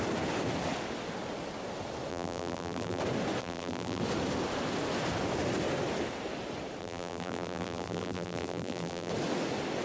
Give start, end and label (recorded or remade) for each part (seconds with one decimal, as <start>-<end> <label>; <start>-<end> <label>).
0.0-2.1 recorded; 2.1-3.0 remade; 3.0-3.4 recorded; 3.4-4.0 remade; 4.0-6.8 recorded; 6.8-9.1 remade; 9.1-9.8 recorded